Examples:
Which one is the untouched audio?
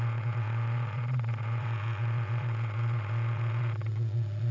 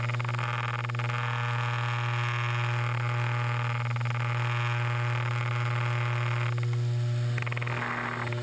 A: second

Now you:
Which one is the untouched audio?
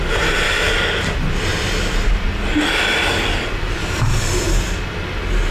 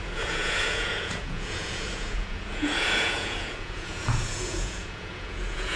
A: first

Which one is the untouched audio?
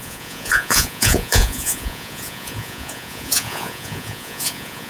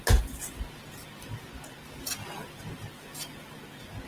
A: second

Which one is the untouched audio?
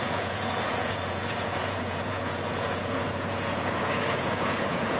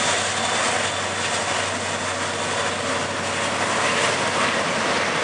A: second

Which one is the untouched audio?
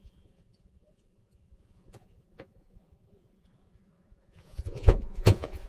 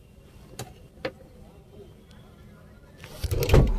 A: second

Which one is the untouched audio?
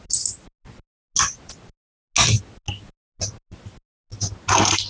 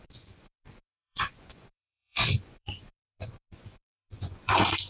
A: first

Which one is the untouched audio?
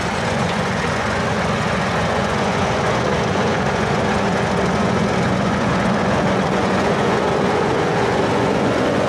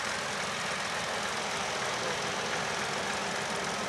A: second